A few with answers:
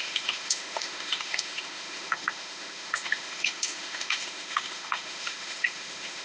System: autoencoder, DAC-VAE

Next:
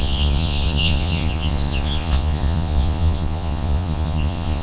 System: vocoder, Vocos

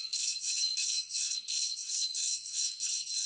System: codec, SNAC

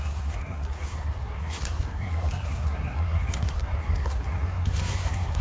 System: codec, SNAC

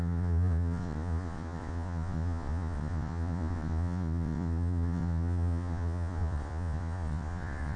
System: vocoder, Vocos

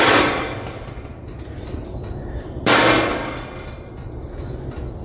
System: none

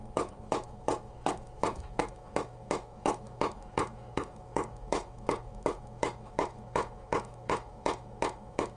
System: autoencoder, DAC-VAE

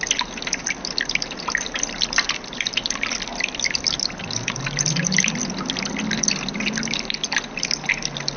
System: none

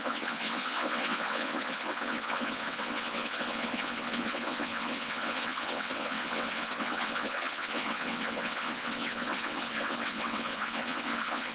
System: vocoder, WaveNeXt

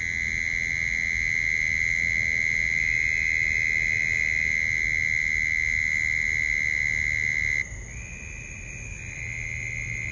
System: none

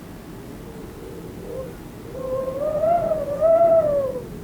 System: none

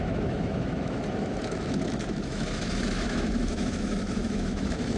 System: autoencoder, DAC-VAE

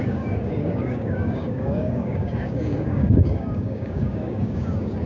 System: codec, DAC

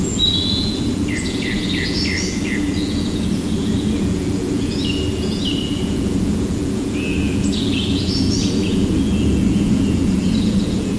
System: vocoder, Vocos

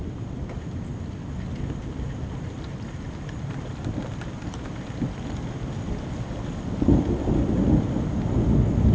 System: none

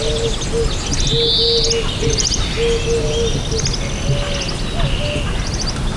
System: none